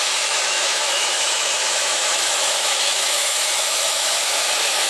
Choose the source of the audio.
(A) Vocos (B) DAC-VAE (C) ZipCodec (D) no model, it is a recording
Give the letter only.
B